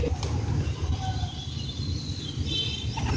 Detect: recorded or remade recorded